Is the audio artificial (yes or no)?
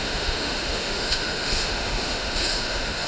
yes